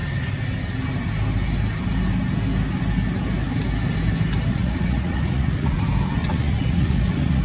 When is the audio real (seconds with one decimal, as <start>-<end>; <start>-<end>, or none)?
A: 0.0-4.5; 5.8-6.2